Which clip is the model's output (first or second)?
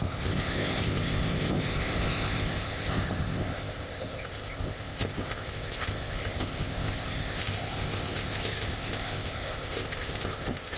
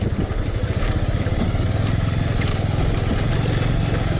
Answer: first